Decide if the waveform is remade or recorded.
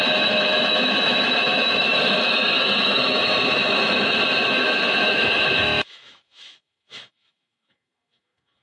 remade